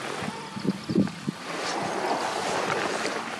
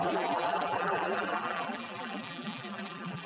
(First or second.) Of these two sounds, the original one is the first